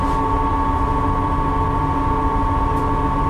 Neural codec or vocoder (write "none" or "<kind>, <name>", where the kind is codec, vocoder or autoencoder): none